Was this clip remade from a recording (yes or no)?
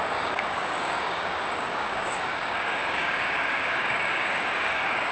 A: yes